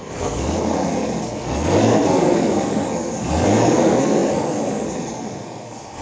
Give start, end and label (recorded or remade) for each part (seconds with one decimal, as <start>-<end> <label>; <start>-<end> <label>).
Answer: 0.0-6.0 remade